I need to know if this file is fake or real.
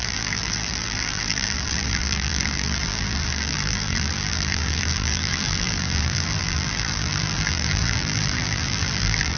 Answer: fake